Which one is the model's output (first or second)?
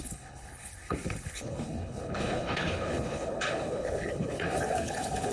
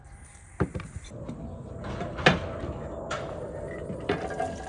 first